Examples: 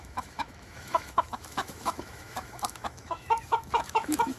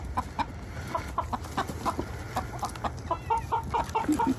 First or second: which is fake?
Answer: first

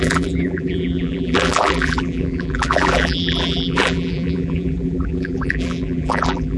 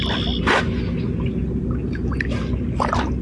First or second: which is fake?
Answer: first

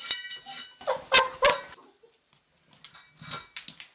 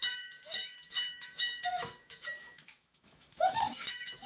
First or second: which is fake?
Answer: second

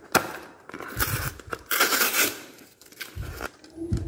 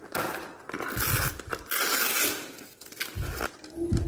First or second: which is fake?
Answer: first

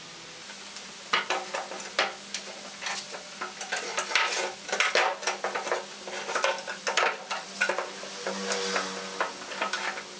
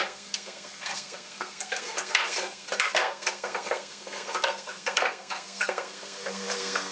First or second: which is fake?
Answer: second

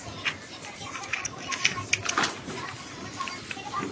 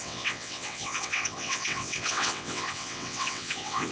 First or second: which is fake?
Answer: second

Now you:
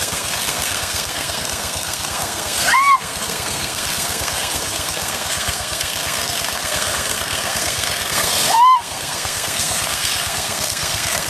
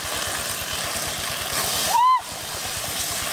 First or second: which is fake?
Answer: first